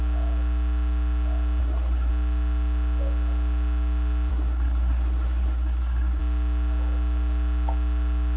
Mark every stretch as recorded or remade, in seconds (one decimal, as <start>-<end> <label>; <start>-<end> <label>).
0.0-1.6 recorded; 1.6-2.1 remade; 2.1-4.3 recorded; 4.3-6.2 remade; 6.2-8.4 recorded